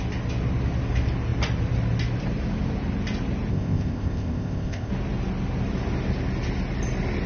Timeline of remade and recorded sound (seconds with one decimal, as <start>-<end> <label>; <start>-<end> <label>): 0.0-3.5 recorded; 3.5-4.9 remade; 4.9-7.3 recorded